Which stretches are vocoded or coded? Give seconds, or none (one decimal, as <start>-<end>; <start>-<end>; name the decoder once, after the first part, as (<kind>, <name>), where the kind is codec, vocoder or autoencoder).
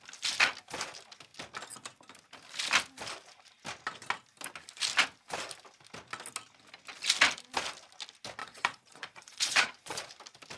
8.4-10.1 (vocoder, Vocos)